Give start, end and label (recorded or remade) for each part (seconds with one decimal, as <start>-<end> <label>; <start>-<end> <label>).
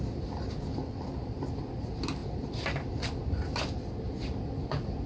0.0-5.1 recorded